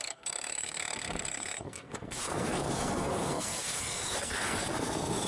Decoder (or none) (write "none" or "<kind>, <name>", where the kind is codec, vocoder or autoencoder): codec, SNAC